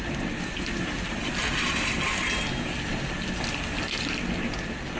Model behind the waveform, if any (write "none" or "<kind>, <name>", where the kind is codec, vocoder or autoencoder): none